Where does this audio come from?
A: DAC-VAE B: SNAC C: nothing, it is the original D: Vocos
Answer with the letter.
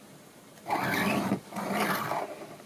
C